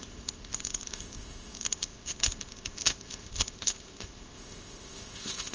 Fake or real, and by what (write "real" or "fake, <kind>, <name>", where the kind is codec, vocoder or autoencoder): fake, codec, ZipCodec